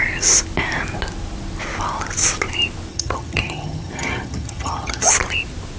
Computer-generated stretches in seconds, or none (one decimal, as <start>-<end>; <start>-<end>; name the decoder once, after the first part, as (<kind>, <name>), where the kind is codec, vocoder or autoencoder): 2.9-5.1 (vocoder, HiFi-GAN)